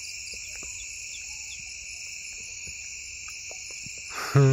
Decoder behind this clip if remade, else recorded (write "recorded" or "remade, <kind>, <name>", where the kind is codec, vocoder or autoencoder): recorded